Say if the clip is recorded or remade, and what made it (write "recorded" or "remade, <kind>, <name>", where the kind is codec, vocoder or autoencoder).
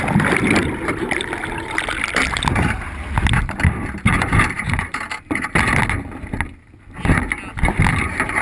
recorded